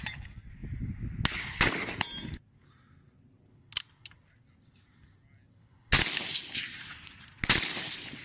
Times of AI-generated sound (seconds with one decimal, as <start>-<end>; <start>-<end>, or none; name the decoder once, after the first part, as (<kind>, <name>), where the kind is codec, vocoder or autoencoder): none